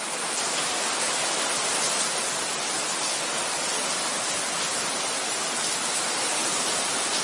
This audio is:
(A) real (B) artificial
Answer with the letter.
A